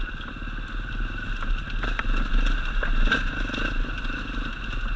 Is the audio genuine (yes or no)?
yes